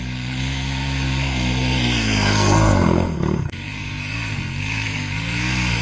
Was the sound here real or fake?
fake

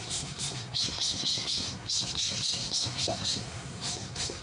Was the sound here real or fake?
fake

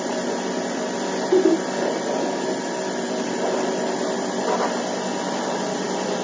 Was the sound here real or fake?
real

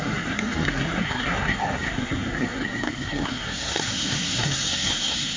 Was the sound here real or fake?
fake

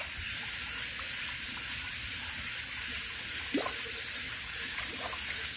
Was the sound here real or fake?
real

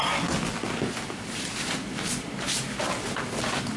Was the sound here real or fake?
real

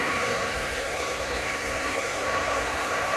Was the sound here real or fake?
fake